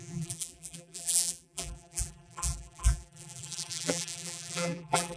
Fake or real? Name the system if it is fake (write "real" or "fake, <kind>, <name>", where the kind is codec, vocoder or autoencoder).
fake, vocoder, BigVGAN v2